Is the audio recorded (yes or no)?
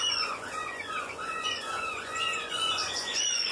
no